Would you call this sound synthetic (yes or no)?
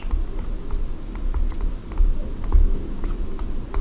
no